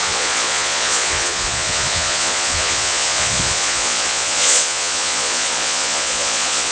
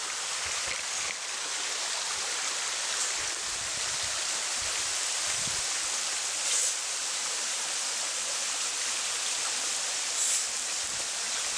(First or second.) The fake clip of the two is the first